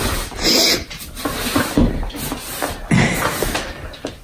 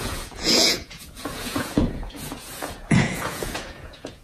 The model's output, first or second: second